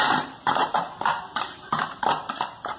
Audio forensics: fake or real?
fake